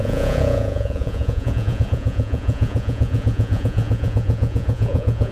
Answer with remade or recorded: remade